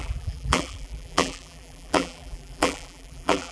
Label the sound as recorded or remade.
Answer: remade